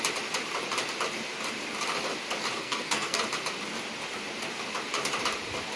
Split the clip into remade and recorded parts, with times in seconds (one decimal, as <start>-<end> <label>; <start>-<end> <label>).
0.0-2.6 recorded; 2.6-3.2 remade; 3.2-5.8 recorded